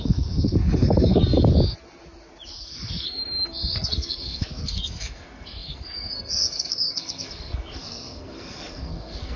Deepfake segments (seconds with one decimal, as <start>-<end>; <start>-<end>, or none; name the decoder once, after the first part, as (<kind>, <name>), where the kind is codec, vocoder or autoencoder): 0.0-1.2 (codec, SNAC); 2.6-3.2; 3.7-9.4